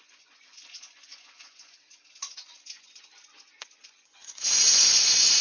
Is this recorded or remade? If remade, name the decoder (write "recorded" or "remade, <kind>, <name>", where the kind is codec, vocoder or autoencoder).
remade, vocoder, Vocos